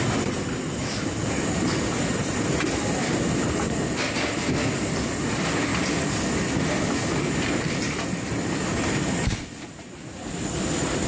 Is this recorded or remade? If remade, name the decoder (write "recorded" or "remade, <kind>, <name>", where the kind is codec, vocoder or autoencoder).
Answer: recorded